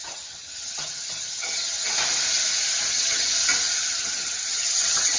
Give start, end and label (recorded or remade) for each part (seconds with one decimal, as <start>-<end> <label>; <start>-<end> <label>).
0.0-1.9 remade; 1.9-2.9 recorded; 2.9-3.3 remade; 3.3-3.8 recorded; 3.8-5.2 remade